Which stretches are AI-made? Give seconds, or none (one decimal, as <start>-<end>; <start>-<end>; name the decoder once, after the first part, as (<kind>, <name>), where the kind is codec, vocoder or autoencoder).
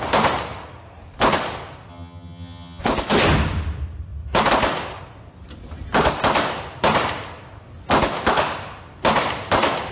1.9-2.8 (vocoder, HiFi-GAN)